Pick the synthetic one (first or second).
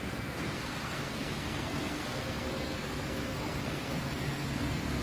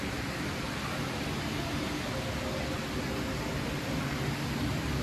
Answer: first